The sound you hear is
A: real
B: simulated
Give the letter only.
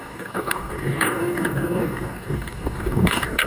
B